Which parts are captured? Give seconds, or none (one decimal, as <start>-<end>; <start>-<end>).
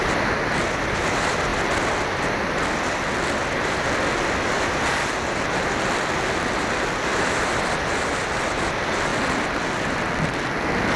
0.0-11.0